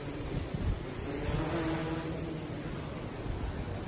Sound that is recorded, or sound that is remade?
recorded